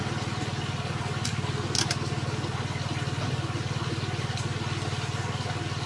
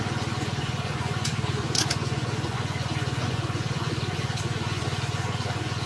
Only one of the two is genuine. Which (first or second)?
first